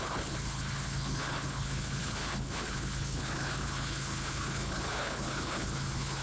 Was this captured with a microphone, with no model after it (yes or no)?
no